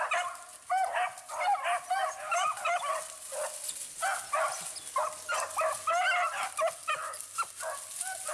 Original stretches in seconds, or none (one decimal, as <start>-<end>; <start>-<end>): 0.0-2.0; 3.0-6.8; 7.5-8.3